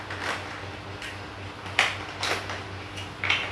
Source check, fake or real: real